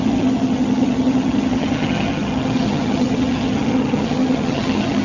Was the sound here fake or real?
fake